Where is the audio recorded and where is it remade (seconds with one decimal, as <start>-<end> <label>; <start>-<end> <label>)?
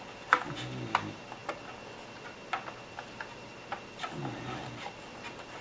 0.0-5.6 recorded